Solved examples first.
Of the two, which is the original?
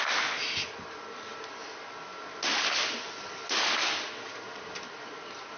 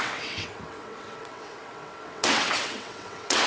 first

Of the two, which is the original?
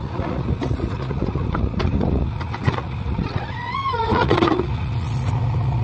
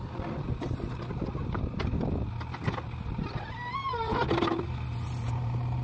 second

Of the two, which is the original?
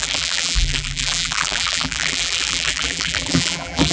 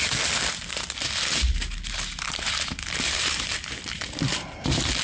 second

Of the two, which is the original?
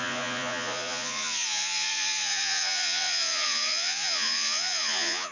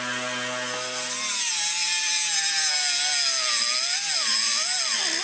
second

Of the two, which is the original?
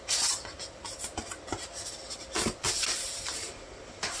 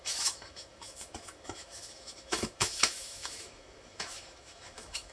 first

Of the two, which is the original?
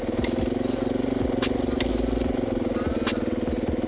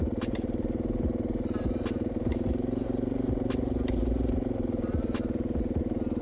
first